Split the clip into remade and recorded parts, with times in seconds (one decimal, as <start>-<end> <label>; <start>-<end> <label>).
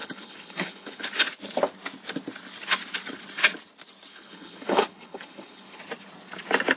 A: 0.0-1.0 remade; 1.0-4.1 recorded; 4.1-5.8 remade; 5.8-6.8 recorded